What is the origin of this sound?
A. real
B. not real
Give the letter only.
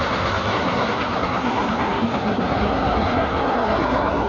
B